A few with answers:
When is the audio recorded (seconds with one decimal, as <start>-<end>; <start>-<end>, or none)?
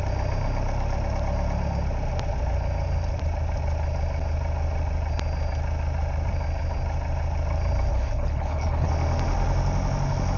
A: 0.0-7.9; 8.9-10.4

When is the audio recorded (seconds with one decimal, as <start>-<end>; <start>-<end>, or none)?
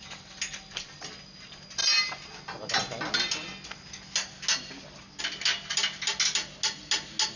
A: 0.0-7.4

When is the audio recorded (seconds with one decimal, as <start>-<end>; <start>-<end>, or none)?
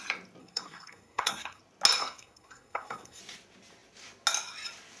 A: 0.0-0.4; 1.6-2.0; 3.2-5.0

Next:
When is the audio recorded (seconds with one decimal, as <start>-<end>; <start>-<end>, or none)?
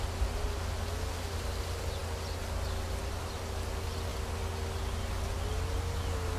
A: 0.0-6.4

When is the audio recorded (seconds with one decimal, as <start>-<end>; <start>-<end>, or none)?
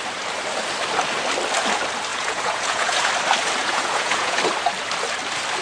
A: 0.0-2.1; 3.1-3.6; 4.4-5.6